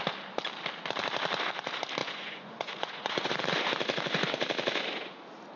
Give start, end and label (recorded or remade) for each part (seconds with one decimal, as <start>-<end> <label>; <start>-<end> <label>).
0.0-2.0 recorded; 2.0-3.3 remade; 3.3-5.6 recorded